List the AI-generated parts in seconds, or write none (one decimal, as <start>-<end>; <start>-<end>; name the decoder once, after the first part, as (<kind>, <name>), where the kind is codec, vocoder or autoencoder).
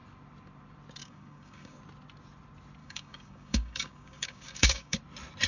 1.0-1.8 (codec, DAC); 2.8-5.0